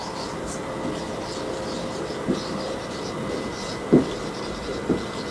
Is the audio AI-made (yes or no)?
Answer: no